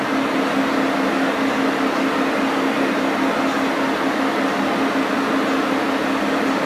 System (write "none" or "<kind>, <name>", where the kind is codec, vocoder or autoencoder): none